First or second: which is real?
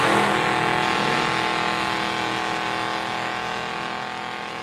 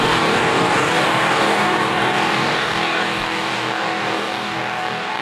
first